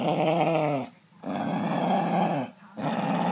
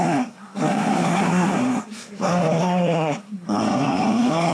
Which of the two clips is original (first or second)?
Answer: first